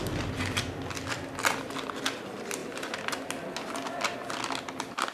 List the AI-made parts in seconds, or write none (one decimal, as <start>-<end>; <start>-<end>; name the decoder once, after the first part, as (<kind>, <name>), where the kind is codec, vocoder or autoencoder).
none